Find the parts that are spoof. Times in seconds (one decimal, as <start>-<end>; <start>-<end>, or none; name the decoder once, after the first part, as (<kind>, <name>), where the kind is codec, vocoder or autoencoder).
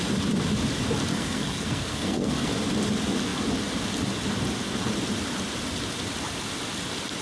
1.1-2.5 (codec, SNAC)